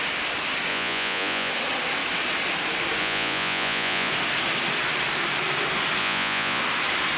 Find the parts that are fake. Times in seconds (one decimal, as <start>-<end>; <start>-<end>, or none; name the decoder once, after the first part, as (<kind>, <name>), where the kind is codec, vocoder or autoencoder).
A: 0.7-1.5 (vocoder, Vocos); 3.0-4.1; 6.0-6.6